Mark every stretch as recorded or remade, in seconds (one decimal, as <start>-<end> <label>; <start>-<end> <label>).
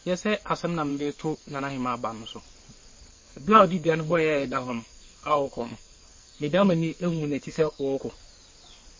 0.0-0.9 recorded; 0.9-1.6 remade; 1.6-3.1 recorded; 3.1-8.0 remade; 8.0-9.0 recorded